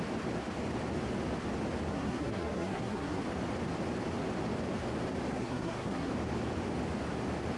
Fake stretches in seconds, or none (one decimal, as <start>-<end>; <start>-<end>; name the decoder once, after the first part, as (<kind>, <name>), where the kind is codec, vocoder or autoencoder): 1.9-3.2 (codec, SNAC); 5.3-6.1